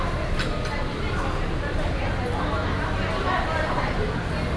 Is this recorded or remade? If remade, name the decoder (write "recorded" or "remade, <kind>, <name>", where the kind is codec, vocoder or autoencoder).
recorded